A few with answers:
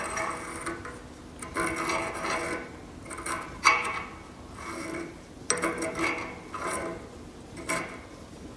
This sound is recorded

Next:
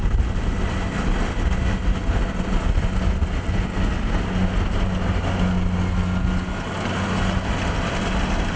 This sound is recorded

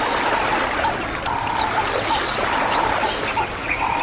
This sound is recorded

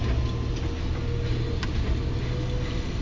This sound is recorded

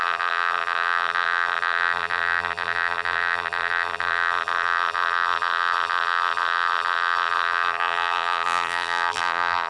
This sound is remade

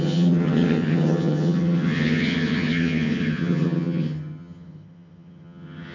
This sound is remade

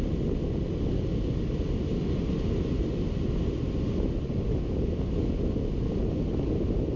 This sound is recorded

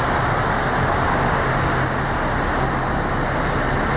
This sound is recorded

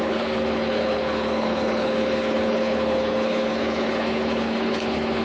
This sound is remade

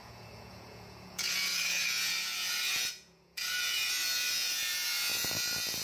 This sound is remade